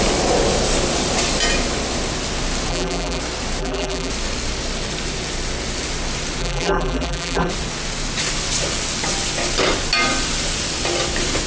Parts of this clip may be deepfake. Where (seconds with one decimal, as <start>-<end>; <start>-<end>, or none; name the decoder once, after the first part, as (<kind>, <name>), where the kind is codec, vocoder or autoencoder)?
2.7-3.2 (vocoder, BigVGAN v2); 3.6-4.1; 6.4-7.5